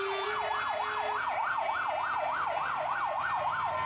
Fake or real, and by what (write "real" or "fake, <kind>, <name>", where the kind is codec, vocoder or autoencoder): real